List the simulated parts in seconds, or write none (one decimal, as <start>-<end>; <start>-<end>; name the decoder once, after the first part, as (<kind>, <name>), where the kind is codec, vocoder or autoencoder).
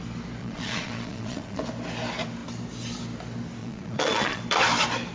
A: 0.4-1.6 (vocoder, Vocos); 3.6-4.4